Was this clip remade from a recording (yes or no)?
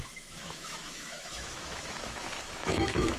yes